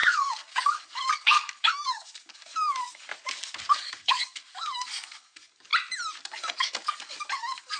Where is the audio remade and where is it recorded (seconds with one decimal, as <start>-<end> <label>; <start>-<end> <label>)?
0.0-3.1 remade; 3.1-3.7 recorded; 3.7-5.7 remade; 5.7-6.2 recorded; 6.2-7.8 remade